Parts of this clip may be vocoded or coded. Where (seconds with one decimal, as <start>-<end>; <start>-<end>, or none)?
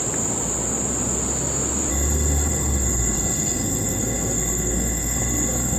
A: 1.9-5.8